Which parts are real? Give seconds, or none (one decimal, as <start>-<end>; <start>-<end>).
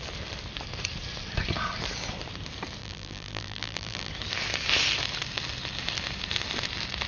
0.0-2.8; 4.1-7.1